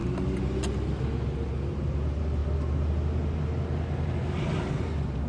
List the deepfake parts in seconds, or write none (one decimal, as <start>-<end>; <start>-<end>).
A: none